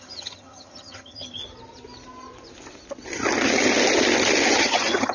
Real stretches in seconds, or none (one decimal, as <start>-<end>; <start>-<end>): 1.4-4.5